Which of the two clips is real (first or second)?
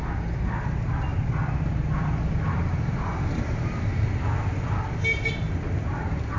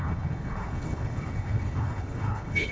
first